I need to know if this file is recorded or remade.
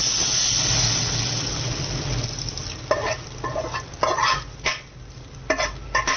recorded